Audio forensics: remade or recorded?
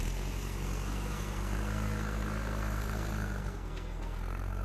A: remade